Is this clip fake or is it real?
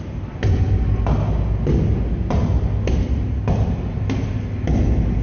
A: real